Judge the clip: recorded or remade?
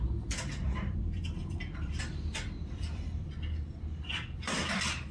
remade